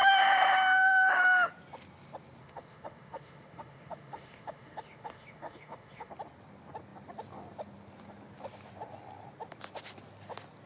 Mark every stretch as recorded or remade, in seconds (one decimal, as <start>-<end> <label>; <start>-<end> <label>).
0.0-1.5 remade; 1.5-2.4 recorded; 2.4-6.1 remade; 6.1-10.7 recorded